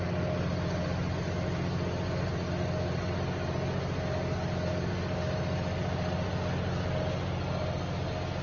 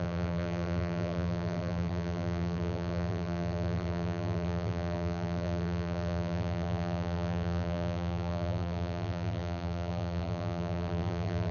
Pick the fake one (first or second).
second